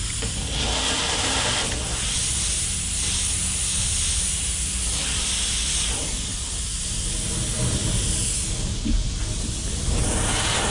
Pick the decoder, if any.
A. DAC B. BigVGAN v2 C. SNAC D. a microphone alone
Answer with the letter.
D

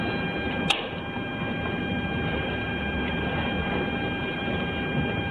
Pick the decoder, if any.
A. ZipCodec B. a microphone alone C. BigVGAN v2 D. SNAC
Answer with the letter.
B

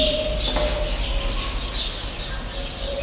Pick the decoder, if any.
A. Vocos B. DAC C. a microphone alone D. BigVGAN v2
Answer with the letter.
C